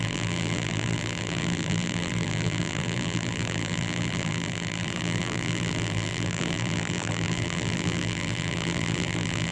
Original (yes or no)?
no